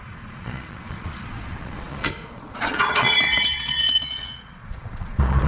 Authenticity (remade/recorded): remade